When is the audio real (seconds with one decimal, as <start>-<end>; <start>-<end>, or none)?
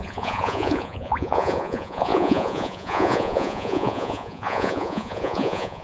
none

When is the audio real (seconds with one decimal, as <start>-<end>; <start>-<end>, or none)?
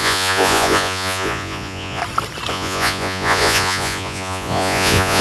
2.0-2.5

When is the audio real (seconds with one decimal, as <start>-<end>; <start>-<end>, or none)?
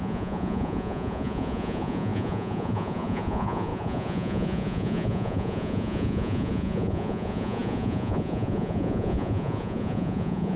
none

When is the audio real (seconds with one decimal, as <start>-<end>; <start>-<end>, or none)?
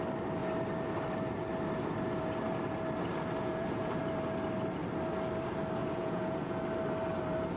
0.0-3.4; 4.0-5.8; 6.6-7.6